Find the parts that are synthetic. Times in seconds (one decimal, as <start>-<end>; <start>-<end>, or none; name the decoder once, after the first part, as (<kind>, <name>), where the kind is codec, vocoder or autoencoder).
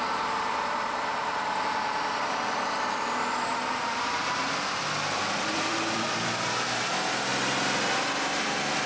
0.0-7.3 (vocoder, BigVGAN v2); 8.0-8.9